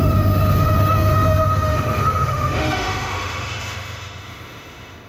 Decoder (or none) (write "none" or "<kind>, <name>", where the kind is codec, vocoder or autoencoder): autoencoder, DAC-VAE